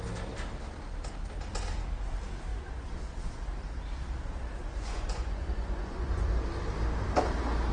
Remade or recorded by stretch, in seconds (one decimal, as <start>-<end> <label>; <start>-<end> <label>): 0.0-2.5 recorded; 2.5-3.3 remade; 3.3-4.6 recorded; 4.6-6.3 remade; 6.3-7.7 recorded